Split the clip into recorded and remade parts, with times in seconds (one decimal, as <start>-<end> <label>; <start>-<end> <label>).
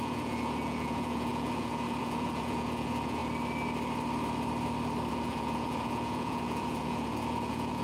0.0-3.2 remade; 3.2-5.1 recorded; 5.1-7.8 remade